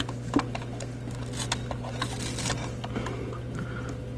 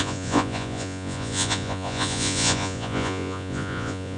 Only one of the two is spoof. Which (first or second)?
second